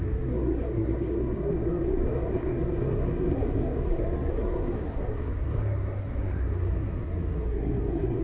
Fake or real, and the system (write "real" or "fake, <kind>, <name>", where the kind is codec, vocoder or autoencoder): fake, codec, SNAC